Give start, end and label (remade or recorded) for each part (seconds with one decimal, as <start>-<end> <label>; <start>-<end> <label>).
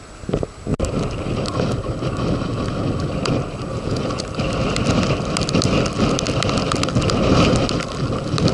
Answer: 0.0-3.7 recorded; 3.7-4.2 remade; 4.2-8.5 recorded